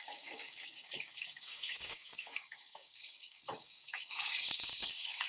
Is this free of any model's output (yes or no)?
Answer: no